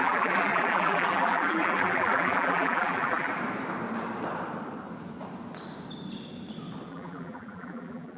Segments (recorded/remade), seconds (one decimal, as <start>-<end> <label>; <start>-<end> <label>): 0.0-3.3 remade; 3.3-6.9 recorded; 6.9-8.2 remade